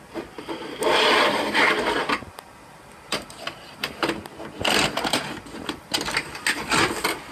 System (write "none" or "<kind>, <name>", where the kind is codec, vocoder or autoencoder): none